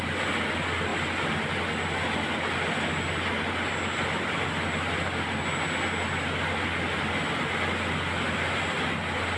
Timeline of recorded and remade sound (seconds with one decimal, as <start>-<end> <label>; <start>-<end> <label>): 0.0-9.4 recorded